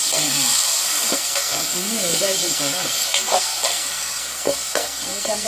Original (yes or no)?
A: no